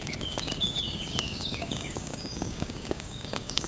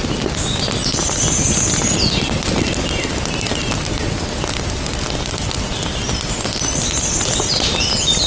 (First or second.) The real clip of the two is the second